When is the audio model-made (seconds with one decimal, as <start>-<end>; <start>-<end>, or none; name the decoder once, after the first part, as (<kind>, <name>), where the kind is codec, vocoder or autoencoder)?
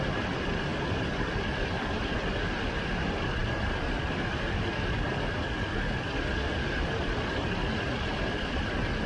none